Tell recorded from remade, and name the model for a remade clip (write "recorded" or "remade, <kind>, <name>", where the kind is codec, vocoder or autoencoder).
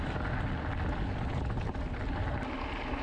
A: recorded